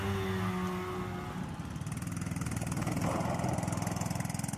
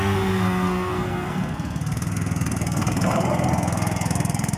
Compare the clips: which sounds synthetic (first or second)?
second